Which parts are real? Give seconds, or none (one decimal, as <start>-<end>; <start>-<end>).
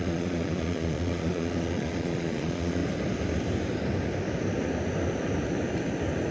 2.8-6.3